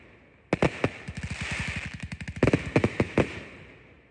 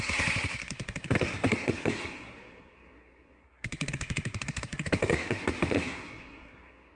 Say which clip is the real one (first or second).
first